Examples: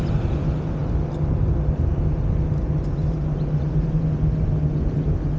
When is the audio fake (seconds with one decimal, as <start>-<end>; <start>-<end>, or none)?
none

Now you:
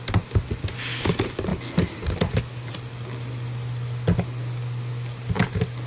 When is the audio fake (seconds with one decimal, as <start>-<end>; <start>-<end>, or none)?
none

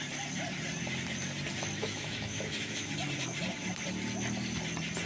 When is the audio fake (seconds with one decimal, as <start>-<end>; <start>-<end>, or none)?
1.8-2.9

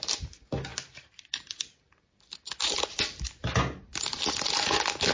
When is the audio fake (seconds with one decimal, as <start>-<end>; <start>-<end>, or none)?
none